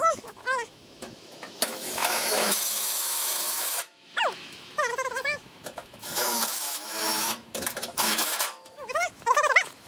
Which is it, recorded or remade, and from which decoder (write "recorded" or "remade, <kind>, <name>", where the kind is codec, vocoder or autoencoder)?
remade, autoencoder, DAC-VAE